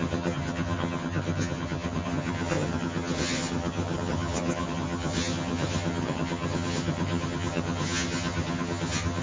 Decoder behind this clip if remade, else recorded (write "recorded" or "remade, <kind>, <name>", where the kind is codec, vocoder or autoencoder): remade, vocoder, HiFi-GAN